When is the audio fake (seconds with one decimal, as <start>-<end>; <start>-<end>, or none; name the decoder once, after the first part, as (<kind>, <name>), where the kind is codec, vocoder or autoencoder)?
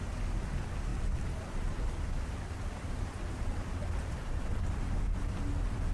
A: 0.9-4.4 (vocoder, BigVGAN v2)